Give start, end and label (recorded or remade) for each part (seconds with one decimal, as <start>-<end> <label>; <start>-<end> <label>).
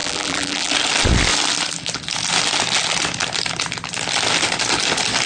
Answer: 0.0-0.7 remade; 0.7-5.3 recorded